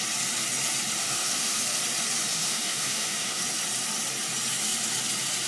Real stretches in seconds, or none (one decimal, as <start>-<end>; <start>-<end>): 0.0-1.0; 1.6-2.3; 3.4-5.5